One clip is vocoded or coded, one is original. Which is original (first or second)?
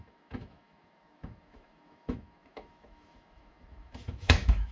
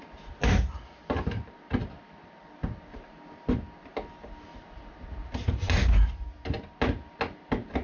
second